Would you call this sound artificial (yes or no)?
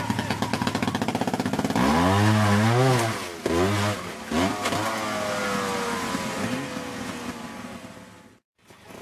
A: no